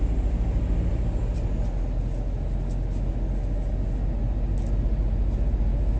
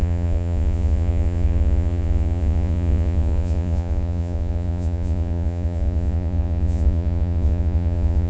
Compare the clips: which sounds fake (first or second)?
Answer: second